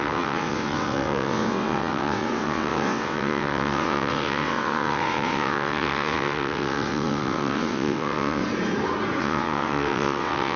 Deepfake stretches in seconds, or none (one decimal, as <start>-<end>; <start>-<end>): 0.0-8.4; 9.2-10.6